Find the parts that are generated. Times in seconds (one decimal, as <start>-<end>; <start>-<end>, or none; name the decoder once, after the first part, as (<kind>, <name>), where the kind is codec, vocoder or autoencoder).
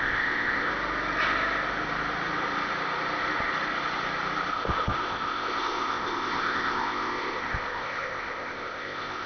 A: 0.0-0.7 (codec, ZipCodec); 4.5-9.3